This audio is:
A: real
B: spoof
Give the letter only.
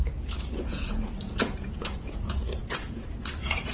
B